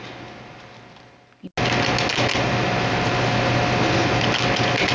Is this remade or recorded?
recorded